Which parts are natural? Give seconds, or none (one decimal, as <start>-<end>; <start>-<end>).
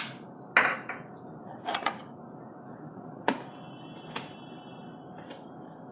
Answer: 0.0-1.4; 1.9-2.7; 3.3-5.9